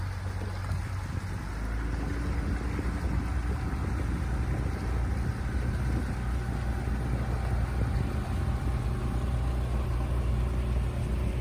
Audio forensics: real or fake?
real